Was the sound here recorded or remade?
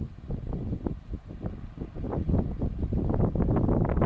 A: recorded